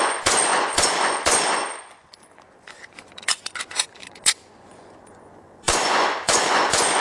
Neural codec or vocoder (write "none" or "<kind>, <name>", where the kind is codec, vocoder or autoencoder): vocoder, Vocos